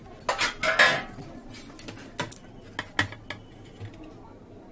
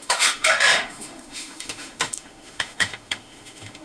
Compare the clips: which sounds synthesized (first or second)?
second